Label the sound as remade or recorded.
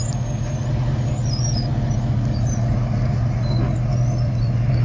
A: recorded